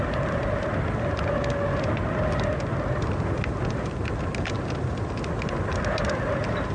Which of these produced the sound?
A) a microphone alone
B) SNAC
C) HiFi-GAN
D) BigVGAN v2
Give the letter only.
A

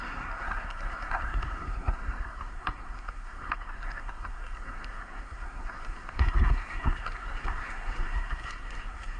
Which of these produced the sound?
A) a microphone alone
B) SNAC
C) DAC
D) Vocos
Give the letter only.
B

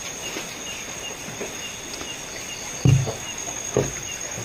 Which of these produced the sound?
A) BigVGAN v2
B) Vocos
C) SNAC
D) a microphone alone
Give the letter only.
D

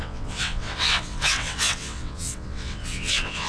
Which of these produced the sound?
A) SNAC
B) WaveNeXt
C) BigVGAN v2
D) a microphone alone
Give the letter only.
B